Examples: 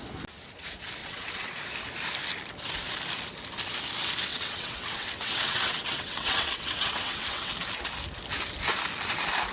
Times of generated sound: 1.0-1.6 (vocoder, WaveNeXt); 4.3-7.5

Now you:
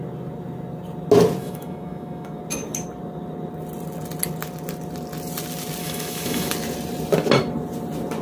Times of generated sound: 1.4-2.4 (autoencoder, DAC-VAE); 5.8-6.5

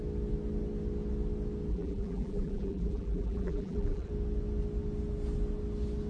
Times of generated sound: 1.7-4.1 (vocoder, BigVGAN v2)

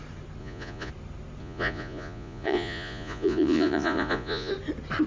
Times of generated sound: 0.4-0.9 (vocoder, Vocos); 1.4-4.5

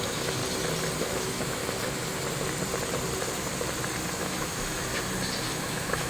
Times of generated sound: 0.0-0.4 (autoencoder, DAC-VAE); 1.0-1.6; 4.1-4.9; 5.5-6.1

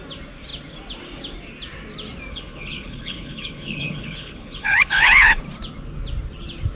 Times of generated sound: 2.3-5.4 (codec, HILCodec)

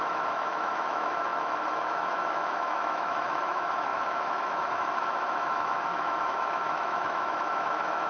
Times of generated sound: 0.0-8.1 (autoencoder, DAC-VAE)